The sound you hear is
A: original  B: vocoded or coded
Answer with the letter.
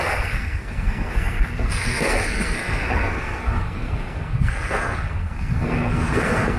B